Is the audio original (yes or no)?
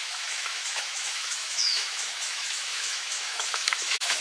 no